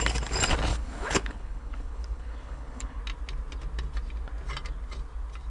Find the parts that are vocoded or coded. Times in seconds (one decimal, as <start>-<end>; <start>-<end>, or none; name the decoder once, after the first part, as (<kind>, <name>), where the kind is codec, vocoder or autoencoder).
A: 0.7-3.0 (codec, HILCodec)